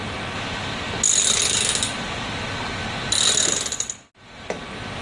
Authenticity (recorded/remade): recorded